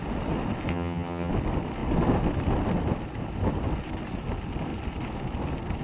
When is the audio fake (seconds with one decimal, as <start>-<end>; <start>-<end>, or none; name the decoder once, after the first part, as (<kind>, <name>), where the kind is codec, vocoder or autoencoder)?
0.7-1.3 (vocoder, HiFi-GAN)

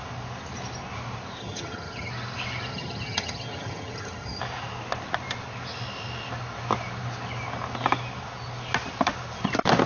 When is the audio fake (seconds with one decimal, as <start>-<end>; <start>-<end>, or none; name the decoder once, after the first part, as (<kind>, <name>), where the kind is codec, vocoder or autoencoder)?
1.4-2.1 (vocoder, HiFi-GAN); 2.7-4.4

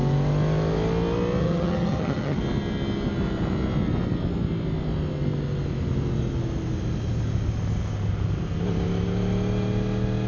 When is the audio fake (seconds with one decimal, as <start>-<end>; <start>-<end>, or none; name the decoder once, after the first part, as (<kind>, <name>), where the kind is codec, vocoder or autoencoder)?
1.4-2.4 (vocoder, HiFi-GAN)

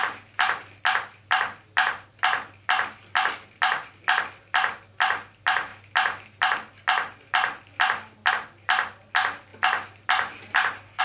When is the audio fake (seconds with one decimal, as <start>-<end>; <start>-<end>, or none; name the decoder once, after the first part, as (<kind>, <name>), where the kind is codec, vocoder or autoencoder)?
none

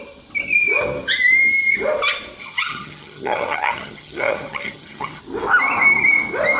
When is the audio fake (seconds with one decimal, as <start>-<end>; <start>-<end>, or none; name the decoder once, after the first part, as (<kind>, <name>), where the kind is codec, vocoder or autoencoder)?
2.4-5.2 (vocoder, HiFi-GAN)

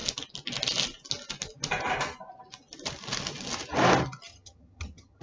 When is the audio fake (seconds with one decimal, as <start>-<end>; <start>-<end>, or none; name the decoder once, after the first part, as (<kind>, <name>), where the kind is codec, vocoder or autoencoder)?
4.3-5.2 (vocoder, HiFi-GAN)

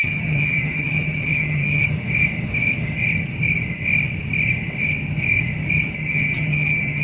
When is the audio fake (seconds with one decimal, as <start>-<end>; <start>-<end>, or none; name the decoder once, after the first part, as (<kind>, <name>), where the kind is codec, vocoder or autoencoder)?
0.0-1.8 (vocoder, HiFi-GAN); 6.0-7.0